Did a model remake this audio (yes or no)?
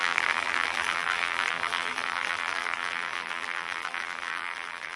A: yes